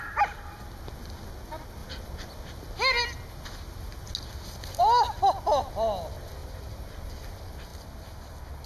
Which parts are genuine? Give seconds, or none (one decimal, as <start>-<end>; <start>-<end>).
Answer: 0.0-6.4; 7.3-8.7